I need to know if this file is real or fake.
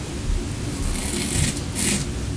real